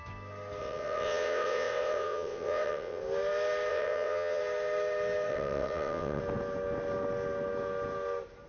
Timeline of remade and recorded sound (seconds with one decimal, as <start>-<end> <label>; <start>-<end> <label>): 0.0-0.6 recorded; 0.6-3.0 remade; 3.0-3.7 recorded; 3.7-4.4 remade; 4.4-5.3 recorded; 5.3-6.2 remade; 6.2-8.5 recorded